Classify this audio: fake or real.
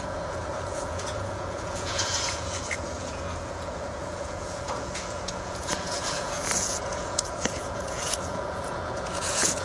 fake